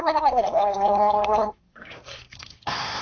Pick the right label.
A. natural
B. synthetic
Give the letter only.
B